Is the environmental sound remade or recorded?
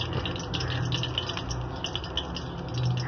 recorded